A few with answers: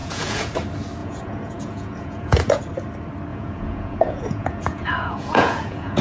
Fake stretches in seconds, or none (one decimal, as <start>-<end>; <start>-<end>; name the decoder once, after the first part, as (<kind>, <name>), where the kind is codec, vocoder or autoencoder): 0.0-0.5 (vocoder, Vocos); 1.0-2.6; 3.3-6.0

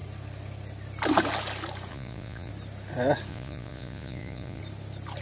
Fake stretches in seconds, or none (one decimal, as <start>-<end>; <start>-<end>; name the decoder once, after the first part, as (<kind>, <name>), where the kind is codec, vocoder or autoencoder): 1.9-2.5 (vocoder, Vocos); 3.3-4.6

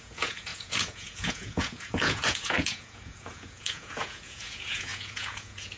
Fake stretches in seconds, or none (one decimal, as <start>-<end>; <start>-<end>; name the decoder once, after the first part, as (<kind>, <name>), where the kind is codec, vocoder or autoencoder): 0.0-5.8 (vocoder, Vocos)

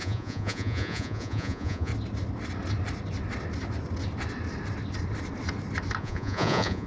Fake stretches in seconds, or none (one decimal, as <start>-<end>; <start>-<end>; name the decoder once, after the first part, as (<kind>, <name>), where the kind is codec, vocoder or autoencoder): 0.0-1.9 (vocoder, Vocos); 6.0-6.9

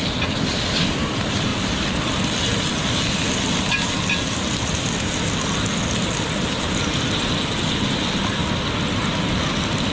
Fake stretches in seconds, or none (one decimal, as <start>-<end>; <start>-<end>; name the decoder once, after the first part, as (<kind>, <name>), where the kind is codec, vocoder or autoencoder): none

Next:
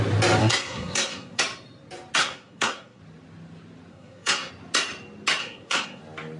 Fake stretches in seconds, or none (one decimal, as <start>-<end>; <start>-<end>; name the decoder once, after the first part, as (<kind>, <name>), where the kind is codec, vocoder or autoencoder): 0.4-1.4 (codec, SNAC); 2.2-3.0; 3.9-4.5; 5.4-6.0

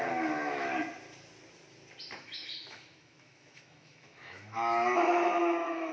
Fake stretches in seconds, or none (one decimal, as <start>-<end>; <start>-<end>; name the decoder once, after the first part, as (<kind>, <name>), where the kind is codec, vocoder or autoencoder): 0.0-0.7 (autoencoder, DAC-VAE); 2.2-5.9

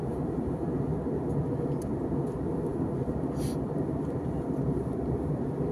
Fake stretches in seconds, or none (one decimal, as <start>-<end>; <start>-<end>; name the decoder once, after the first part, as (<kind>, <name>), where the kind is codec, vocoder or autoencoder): none